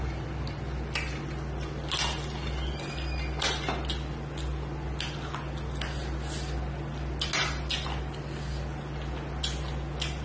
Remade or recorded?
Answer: recorded